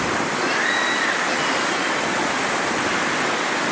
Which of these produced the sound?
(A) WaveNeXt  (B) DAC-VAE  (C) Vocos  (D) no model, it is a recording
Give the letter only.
D